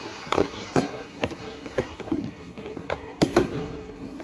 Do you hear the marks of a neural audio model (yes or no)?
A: yes